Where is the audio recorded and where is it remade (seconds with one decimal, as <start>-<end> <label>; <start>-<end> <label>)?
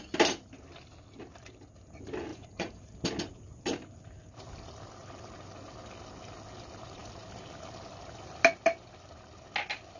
0.0-2.3 recorded; 2.3-2.9 remade; 2.9-10.0 recorded